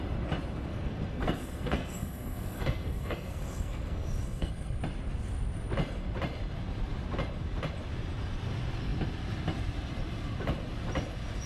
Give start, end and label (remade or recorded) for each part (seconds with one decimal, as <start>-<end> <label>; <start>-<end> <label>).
0.0-0.7 recorded; 0.7-4.8 remade; 4.8-11.5 recorded